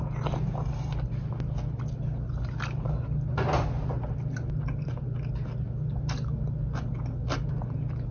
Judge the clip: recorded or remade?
recorded